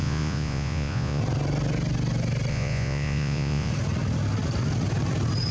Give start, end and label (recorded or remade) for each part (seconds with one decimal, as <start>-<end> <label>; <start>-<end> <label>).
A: 0.0-1.2 remade; 1.2-2.5 recorded; 2.5-3.7 remade; 3.7-5.5 recorded